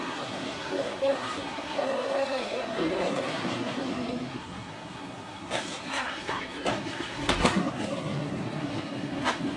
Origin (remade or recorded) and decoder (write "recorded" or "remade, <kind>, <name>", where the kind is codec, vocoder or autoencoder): remade, codec, SNAC